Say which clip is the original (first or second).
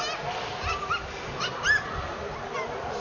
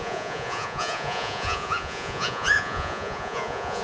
first